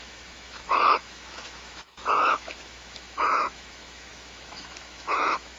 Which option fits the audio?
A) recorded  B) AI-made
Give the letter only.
B